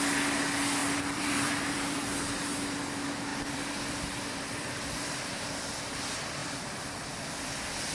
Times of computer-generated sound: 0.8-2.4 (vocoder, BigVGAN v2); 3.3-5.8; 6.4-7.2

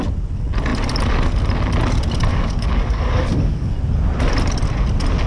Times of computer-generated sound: 2.3-3.7 (codec, DAC)

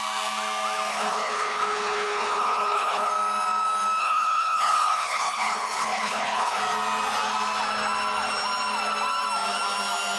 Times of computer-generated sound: 0.9-3.1 (codec, HILCodec); 4.0-6.6